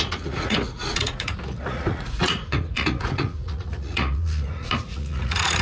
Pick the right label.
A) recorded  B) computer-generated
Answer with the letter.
B